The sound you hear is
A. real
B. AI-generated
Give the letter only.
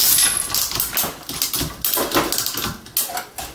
A